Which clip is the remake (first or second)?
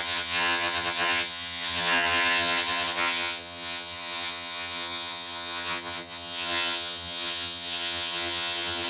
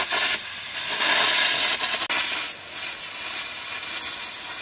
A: first